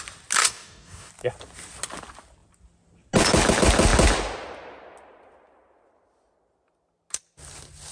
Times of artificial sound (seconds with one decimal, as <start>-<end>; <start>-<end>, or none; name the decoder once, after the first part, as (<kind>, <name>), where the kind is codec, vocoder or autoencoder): 0.4-1.1 (codec, DAC)